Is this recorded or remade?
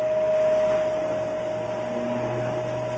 recorded